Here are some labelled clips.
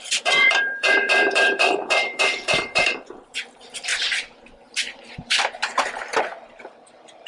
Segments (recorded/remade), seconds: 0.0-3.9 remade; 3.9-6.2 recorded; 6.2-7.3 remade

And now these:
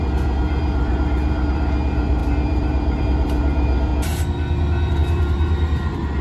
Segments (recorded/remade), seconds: 0.0-3.9 remade; 3.9-4.9 recorded; 4.9-6.2 remade